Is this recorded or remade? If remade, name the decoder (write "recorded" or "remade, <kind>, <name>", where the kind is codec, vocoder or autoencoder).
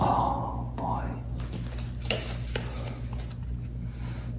recorded